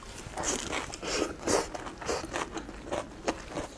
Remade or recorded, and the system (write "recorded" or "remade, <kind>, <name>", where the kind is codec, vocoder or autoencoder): recorded